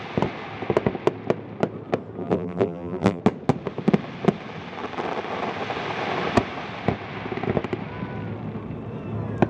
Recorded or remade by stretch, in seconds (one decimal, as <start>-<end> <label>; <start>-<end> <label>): 0.0-2.2 recorded; 2.2-3.2 remade; 3.2-9.5 recorded